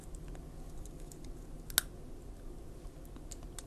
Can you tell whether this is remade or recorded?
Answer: recorded